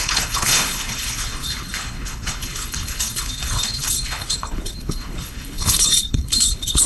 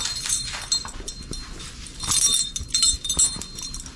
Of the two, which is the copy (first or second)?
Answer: first